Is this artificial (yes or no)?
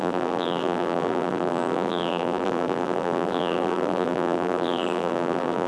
yes